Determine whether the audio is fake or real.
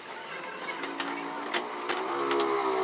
real